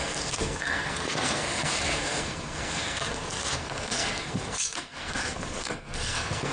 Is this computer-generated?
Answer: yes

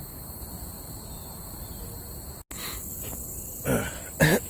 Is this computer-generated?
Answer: no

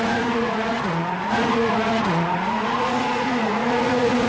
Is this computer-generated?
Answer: yes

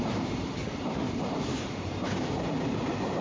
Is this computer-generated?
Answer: yes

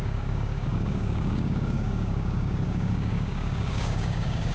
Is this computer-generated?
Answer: yes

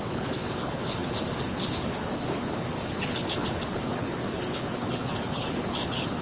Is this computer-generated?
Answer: yes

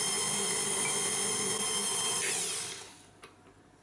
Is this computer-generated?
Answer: no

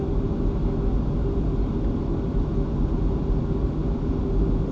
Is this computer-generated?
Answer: no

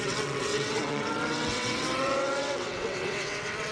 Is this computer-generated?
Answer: yes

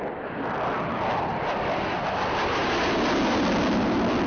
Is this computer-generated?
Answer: no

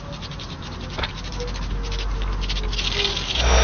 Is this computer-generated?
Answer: no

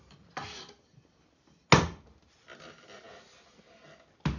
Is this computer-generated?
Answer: no